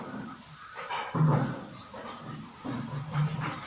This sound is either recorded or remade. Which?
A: remade